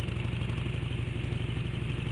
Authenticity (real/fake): real